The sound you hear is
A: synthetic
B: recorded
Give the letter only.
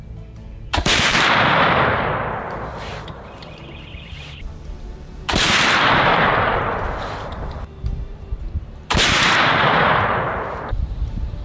A